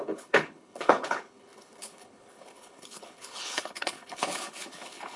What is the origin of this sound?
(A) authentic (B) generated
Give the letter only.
B